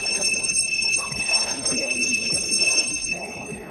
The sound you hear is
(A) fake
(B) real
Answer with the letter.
A